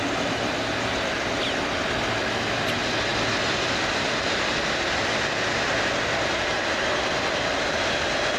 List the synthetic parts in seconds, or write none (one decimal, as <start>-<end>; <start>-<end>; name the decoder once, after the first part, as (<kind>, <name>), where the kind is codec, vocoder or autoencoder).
3.1-6.4 (vocoder, BigVGAN v2)